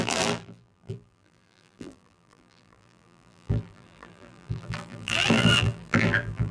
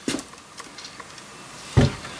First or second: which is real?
second